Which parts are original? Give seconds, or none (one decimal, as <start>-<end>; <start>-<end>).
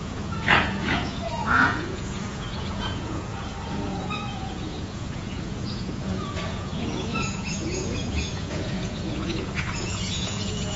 3.5-4.0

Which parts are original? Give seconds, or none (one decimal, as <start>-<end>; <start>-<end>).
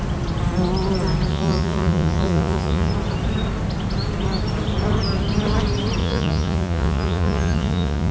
0.0-1.3; 2.9-6.0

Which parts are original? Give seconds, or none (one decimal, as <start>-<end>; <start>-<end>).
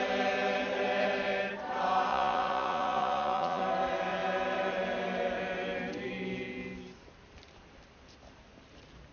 0.0-2.1; 3.6-9.1